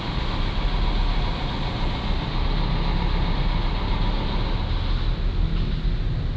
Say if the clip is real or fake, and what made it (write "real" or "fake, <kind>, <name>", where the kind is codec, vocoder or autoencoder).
real